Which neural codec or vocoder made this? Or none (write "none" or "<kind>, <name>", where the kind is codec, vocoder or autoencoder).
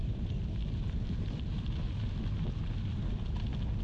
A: none